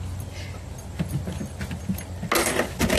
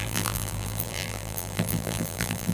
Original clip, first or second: first